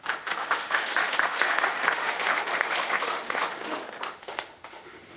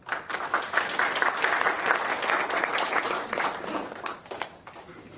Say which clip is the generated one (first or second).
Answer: first